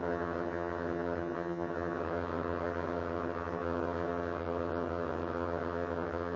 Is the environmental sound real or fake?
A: fake